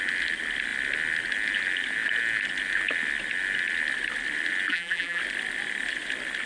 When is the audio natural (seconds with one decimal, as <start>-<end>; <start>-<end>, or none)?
0.0-4.7; 5.2-6.5